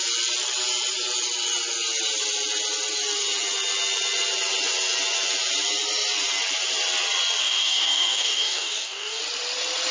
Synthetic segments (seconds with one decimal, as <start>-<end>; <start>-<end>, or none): 7.4-9.2